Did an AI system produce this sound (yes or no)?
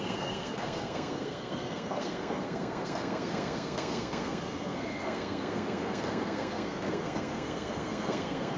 yes